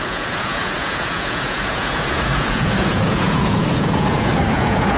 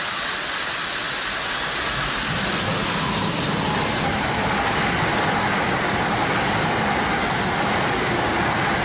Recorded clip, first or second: second